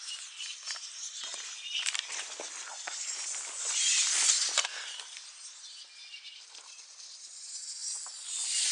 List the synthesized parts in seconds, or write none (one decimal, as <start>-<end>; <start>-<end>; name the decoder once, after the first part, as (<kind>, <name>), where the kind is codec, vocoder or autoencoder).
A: none